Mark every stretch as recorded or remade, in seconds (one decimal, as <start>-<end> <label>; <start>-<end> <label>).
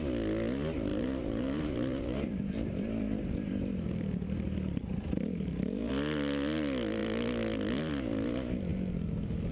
0.0-0.9 recorded; 0.9-5.9 remade; 5.9-9.5 recorded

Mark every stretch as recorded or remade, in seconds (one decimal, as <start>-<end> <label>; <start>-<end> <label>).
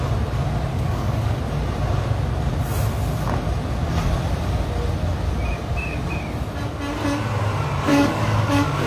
0.0-0.7 recorded; 0.7-1.4 remade; 1.4-7.9 recorded; 7.9-8.9 remade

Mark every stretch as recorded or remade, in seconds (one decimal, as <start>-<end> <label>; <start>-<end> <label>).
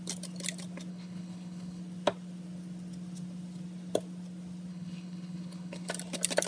0.0-0.9 recorded; 0.9-1.8 remade; 1.8-4.7 recorded; 4.7-5.9 remade; 5.9-6.5 recorded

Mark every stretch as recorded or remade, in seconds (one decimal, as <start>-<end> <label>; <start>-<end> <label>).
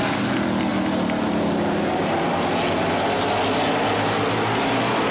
0.0-5.1 recorded